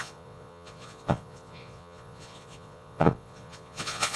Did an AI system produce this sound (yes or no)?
yes